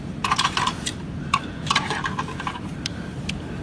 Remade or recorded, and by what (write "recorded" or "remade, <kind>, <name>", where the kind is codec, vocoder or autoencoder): remade, vocoder, BigVGAN v2